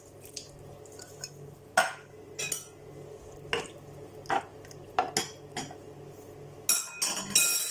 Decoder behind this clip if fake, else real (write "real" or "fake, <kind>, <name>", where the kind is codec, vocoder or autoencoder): real